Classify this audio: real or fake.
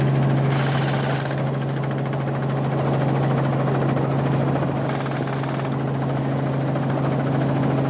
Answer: real